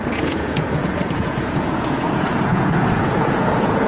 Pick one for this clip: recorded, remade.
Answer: remade